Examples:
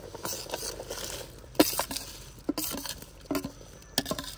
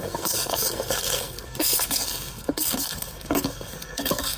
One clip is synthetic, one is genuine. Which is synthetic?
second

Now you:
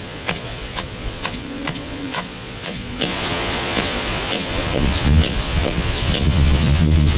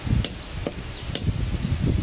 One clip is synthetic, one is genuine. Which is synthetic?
first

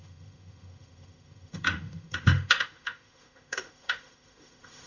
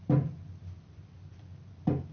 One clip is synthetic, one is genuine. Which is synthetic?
first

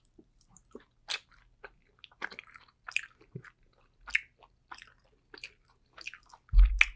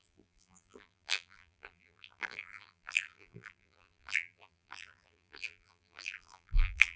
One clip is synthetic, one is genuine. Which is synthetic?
second